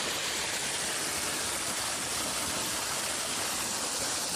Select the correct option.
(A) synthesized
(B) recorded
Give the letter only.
B